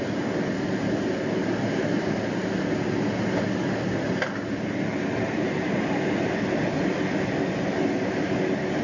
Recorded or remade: recorded